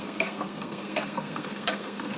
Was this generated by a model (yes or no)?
yes